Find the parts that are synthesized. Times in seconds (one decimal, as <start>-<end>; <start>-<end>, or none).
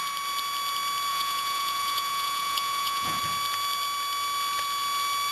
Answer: 1.1-3.2